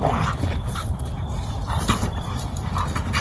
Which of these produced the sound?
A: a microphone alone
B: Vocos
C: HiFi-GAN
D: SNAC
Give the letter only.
A